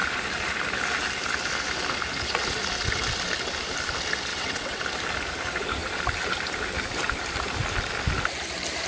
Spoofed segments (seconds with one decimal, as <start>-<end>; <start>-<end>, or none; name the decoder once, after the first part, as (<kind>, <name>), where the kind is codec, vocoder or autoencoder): 4.3-4.8 (vocoder, WaveNeXt)